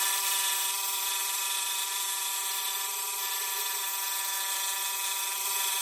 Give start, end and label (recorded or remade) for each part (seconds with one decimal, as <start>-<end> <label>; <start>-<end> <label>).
0.0-3.9 remade; 3.9-5.2 recorded; 5.2-5.8 remade